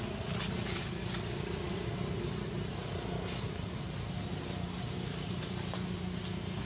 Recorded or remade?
recorded